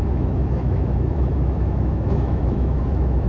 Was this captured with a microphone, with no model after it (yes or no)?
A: no